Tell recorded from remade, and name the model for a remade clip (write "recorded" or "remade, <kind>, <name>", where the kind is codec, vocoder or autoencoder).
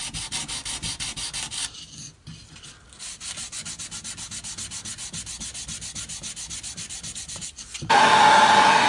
recorded